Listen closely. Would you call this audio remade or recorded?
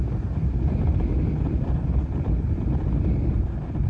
recorded